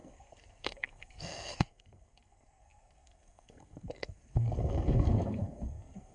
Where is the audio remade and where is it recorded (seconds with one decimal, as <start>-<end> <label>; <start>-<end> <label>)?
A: 0.0-6.1 remade